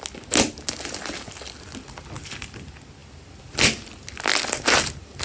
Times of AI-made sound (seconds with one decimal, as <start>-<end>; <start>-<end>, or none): none